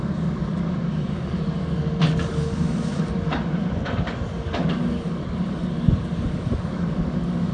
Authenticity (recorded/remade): remade